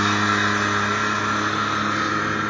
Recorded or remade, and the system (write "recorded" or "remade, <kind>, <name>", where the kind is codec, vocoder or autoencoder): recorded